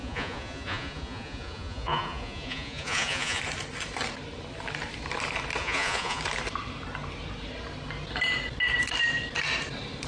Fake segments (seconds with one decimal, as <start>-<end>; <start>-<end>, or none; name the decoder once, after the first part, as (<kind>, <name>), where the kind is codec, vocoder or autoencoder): 0.0-3.4 (vocoder, Vocos); 5.6-6.2